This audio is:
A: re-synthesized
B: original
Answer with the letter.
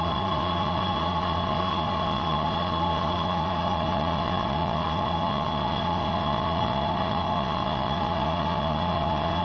A